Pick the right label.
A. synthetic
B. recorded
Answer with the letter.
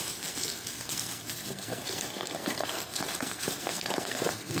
A